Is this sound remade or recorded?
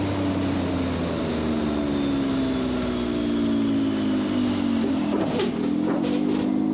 recorded